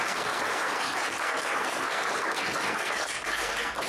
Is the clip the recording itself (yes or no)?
no